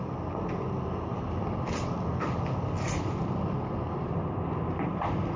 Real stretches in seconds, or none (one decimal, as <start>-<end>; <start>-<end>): 0.0-5.4